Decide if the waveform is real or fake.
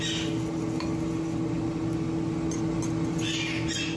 real